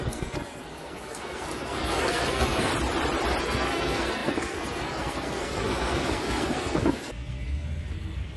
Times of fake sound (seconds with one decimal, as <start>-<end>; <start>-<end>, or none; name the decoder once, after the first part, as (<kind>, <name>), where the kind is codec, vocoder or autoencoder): 0.0-2.7 (codec, SNAC); 3.4-8.4